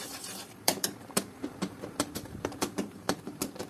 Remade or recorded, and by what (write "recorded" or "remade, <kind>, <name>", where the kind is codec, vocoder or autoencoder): remade, vocoder, BigVGAN v2